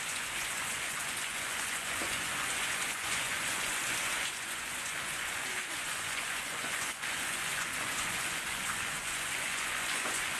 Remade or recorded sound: remade